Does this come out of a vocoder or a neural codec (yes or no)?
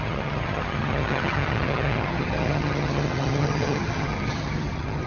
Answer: yes